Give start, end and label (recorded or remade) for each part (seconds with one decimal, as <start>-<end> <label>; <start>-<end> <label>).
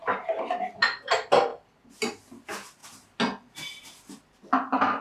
0.0-5.0 recorded